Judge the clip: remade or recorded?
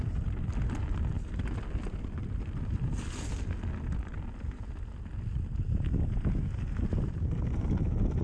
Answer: recorded